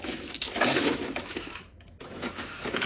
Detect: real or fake fake